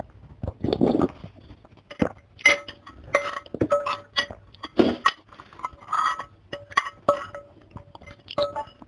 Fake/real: real